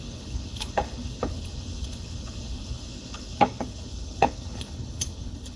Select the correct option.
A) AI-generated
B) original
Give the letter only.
A